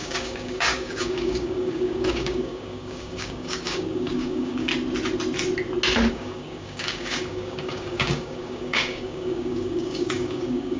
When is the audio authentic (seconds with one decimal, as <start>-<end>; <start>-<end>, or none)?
4.7-6.1